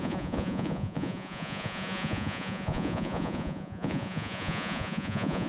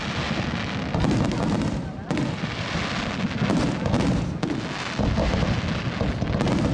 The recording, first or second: second